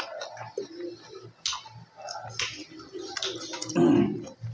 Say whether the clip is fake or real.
real